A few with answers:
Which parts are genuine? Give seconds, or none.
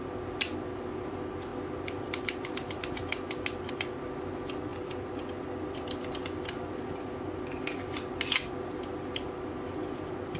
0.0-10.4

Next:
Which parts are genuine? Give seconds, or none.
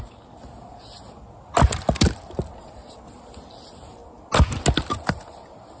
0.0-5.8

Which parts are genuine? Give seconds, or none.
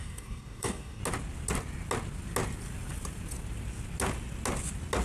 1.0-5.0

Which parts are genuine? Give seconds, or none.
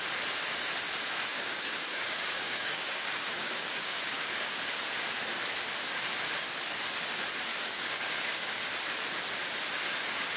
0.0-1.3; 4.5-7.5; 8.6-10.4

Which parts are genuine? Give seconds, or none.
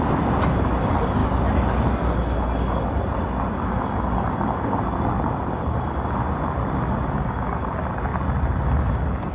0.0-9.3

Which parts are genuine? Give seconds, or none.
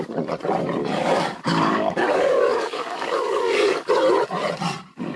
0.0-0.8; 3.9-5.2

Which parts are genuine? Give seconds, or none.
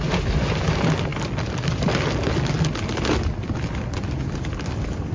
0.0-5.1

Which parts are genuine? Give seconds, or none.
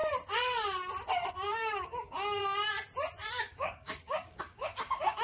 0.0-1.3; 2.4-3.3